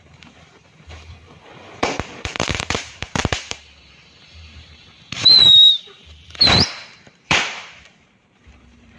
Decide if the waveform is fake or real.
fake